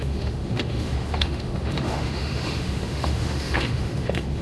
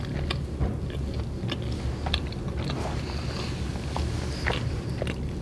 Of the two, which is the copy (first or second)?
first